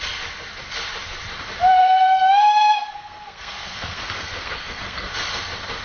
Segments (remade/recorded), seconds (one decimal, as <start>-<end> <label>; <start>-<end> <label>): 0.0-1.8 recorded; 1.8-5.1 remade; 5.1-5.8 recorded